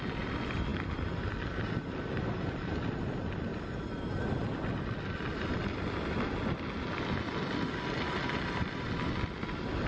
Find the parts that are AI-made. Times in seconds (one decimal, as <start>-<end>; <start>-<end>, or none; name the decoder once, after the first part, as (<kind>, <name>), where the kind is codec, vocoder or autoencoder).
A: none